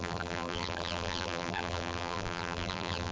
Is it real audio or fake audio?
fake